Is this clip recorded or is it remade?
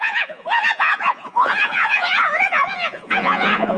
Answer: remade